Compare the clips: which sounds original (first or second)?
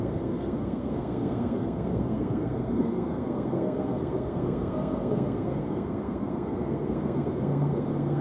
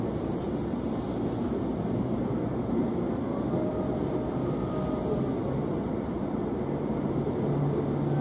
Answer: second